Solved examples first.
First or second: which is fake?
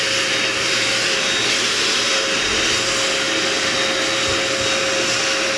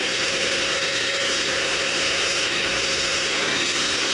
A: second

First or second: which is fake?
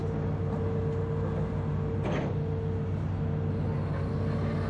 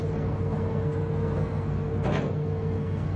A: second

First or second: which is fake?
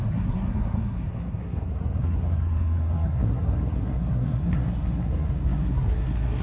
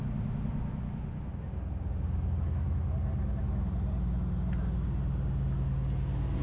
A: first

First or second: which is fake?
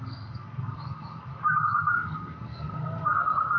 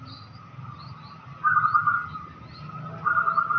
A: first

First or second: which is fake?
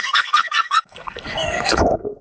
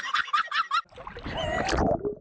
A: first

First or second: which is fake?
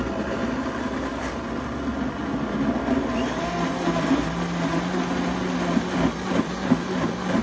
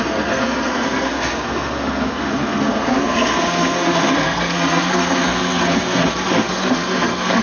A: second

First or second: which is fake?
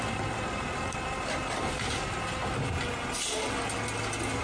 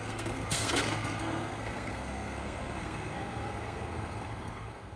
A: second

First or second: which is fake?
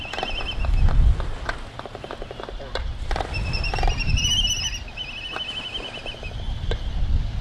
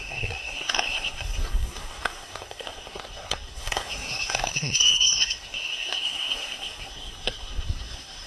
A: second